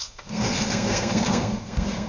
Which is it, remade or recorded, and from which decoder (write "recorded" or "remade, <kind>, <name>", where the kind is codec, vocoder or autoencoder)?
remade, codec, SNAC